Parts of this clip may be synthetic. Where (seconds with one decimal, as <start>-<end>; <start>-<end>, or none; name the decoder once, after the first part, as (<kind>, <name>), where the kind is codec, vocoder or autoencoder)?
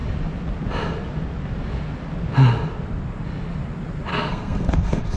4.1-5.2 (codec, SNAC)